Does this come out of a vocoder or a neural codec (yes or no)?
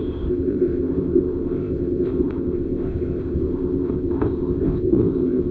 yes